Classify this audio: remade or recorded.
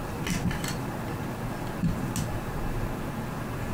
recorded